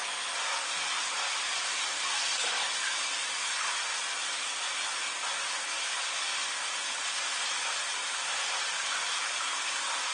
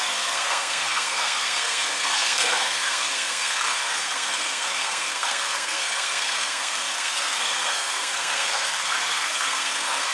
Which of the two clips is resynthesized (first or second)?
second